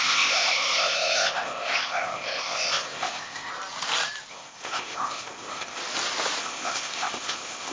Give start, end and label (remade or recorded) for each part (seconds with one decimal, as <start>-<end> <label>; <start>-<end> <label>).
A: 0.0-3.5 remade; 3.5-4.3 recorded; 4.3-5.8 remade; 5.8-6.4 recorded; 6.4-7.7 remade